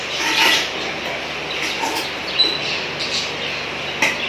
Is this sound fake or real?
real